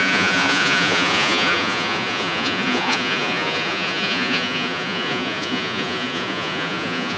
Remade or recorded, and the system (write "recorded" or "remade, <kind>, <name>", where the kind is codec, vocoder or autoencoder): remade, vocoder, Vocos